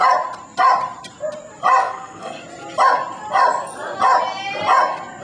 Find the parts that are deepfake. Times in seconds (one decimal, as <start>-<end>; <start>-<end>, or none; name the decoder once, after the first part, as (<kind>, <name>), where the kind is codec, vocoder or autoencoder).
1.8-2.3 (codec, SNAC)

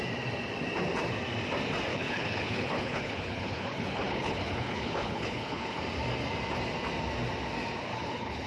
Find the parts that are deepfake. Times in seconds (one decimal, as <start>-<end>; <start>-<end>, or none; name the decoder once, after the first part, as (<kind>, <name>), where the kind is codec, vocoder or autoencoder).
1.9-5.8 (codec, HILCodec); 7.9-8.5

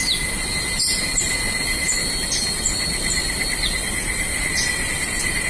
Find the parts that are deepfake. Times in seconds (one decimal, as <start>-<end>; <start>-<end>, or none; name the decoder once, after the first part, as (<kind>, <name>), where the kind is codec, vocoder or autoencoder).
4.3-5.5 (vocoder, BigVGAN v2)

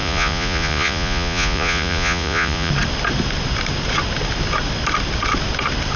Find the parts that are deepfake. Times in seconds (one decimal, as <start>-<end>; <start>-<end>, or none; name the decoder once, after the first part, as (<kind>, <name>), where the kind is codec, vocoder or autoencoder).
0.0-2.7 (vocoder, Vocos)

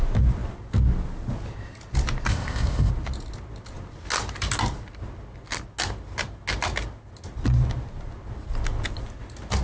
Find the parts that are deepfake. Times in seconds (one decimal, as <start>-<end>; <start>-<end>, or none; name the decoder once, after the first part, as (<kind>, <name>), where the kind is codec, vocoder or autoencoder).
2.3-2.9 (codec, ZipCodec)

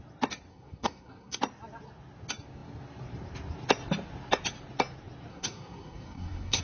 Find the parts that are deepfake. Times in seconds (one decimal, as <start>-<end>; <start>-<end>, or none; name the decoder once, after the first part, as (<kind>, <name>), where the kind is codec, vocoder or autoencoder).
0.5-1.4 (codec, SNAC); 5.3-6.6

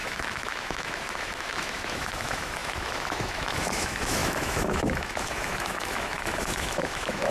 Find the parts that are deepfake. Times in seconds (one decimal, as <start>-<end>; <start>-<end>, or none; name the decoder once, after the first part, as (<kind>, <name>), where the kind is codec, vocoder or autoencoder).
0.0-7.3 (autoencoder, DAC-VAE)

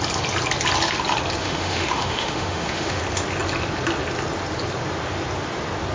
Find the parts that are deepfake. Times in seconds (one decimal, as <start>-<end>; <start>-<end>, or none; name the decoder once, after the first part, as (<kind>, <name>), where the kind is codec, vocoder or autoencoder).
1.4-3.0 (autoencoder, DAC-VAE)